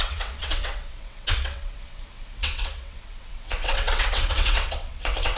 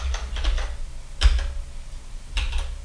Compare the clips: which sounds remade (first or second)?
first